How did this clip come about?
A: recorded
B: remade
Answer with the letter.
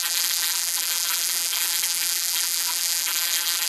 B